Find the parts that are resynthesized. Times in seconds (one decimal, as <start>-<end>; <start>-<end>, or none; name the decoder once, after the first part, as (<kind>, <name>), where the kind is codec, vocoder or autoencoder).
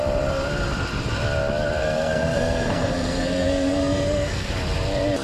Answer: 1.8-4.5 (codec, SNAC)